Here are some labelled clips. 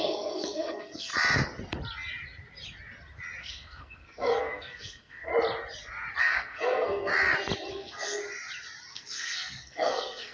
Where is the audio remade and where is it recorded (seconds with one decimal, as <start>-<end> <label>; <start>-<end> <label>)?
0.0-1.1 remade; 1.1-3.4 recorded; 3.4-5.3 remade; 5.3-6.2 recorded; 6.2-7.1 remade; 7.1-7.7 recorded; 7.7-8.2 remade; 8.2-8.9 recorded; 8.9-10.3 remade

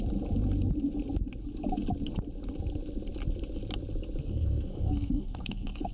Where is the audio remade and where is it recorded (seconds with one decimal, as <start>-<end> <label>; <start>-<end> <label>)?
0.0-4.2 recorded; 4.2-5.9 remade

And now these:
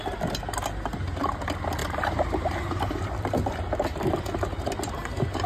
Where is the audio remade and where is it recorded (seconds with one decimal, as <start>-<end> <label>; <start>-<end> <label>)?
0.0-5.5 recorded